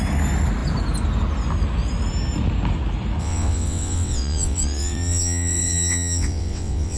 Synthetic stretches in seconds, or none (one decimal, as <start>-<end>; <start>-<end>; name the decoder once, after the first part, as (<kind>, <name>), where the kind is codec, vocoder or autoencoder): 3.2-7.0 (vocoder, WaveNeXt)